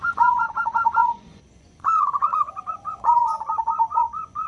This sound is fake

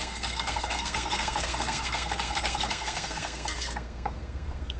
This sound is fake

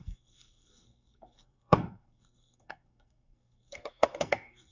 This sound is fake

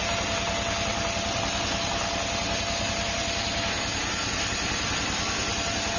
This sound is real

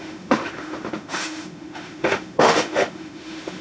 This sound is fake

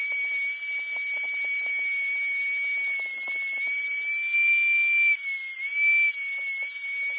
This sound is real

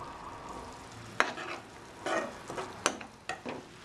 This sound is real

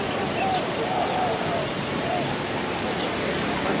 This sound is real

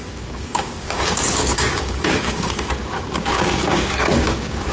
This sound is fake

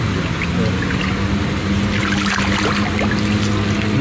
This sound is real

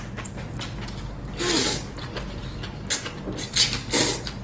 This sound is real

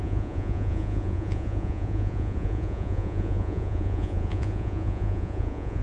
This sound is fake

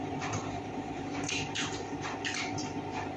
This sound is fake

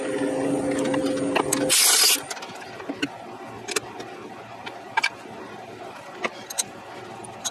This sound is real